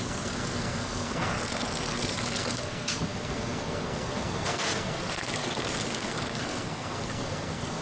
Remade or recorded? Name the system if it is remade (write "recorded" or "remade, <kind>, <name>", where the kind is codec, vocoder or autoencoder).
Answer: remade, codec, SNAC